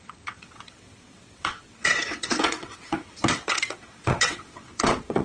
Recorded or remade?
remade